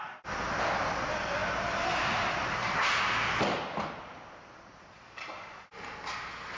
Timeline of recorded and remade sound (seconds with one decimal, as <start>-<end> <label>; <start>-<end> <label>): 0.0-6.6 recorded